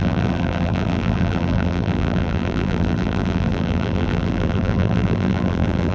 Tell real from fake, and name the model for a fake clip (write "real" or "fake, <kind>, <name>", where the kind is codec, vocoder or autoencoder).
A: fake, vocoder, BigVGAN v2